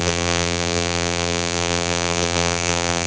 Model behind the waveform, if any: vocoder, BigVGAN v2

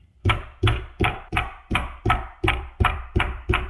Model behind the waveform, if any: vocoder, BigVGAN v2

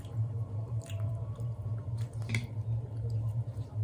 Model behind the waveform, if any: vocoder, BigVGAN v2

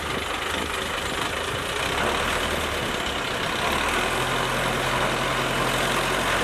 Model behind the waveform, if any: none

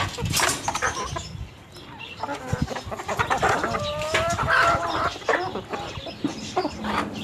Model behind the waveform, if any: none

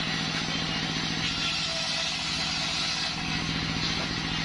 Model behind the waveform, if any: none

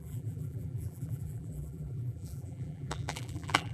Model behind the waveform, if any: vocoder, BigVGAN v2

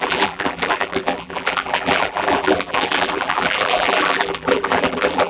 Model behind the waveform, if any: vocoder, BigVGAN v2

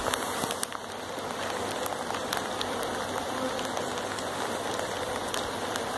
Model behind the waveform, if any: none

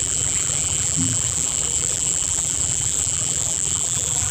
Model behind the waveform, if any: vocoder, BigVGAN v2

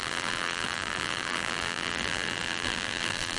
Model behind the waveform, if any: vocoder, BigVGAN v2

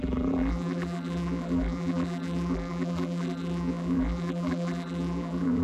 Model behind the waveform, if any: vocoder, BigVGAN v2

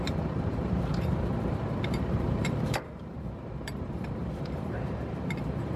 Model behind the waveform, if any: vocoder, BigVGAN v2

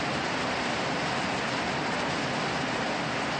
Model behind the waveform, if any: none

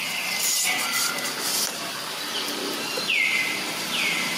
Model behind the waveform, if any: none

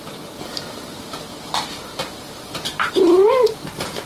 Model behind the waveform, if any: vocoder, BigVGAN v2